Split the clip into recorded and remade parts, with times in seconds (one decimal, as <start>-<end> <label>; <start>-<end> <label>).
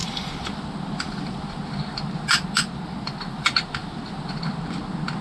0.0-2.1 remade; 2.1-3.8 recorded; 3.8-4.4 remade; 4.4-5.2 recorded